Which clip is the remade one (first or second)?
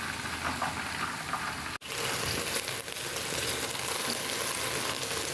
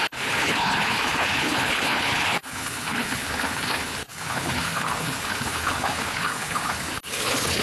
second